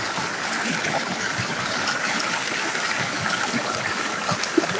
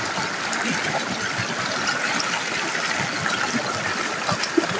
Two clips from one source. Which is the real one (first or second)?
second